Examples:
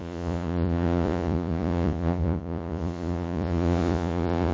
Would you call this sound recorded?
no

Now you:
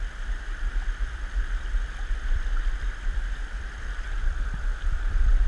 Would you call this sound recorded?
no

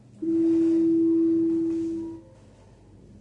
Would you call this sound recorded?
yes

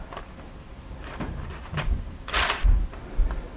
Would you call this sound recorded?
yes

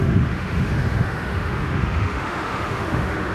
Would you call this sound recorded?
no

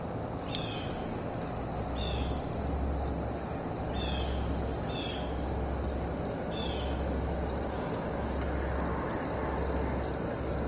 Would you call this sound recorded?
yes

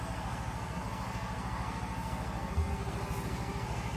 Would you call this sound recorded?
no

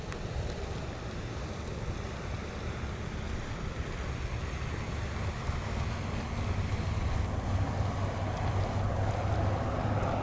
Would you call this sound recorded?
yes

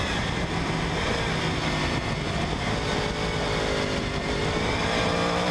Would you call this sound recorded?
yes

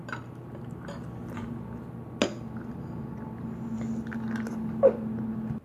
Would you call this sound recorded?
yes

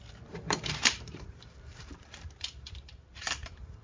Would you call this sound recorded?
no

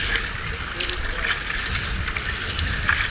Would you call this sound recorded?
yes